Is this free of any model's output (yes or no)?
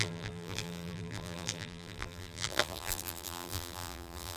no